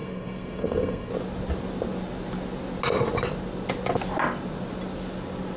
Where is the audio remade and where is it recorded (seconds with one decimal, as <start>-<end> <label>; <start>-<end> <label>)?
0.0-1.1 remade; 1.1-5.6 recorded